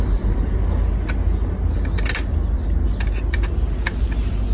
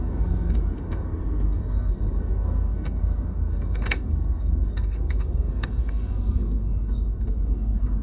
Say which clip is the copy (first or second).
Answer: second